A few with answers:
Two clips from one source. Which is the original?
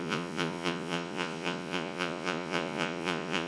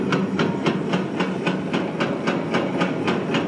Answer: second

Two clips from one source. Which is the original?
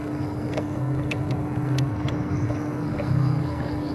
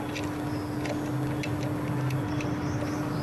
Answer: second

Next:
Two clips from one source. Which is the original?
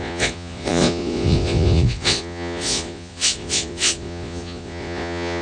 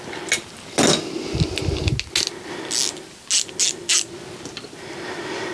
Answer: second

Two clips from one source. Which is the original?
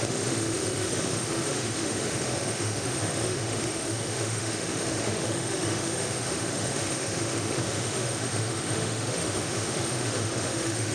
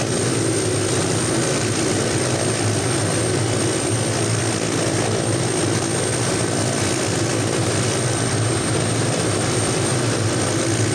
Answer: second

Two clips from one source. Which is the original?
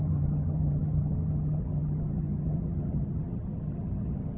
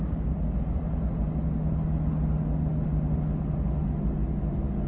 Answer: second